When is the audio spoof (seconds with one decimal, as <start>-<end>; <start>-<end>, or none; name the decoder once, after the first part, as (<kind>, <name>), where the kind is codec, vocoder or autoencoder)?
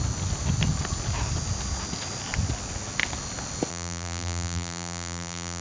3.7-5.6 (vocoder, BigVGAN v2)